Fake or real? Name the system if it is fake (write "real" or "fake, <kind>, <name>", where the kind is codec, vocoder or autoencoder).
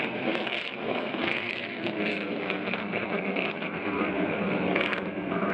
fake, codec, SNAC